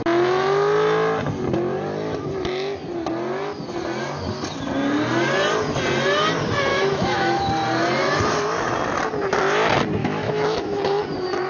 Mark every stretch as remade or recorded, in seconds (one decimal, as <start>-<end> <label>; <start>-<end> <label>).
0.0-6.7 recorded; 6.7-7.4 remade; 7.4-10.0 recorded; 10.0-11.0 remade; 11.0-11.5 recorded